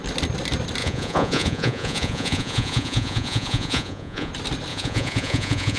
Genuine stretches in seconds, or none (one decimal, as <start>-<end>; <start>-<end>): 0.0-0.8; 4.3-4.7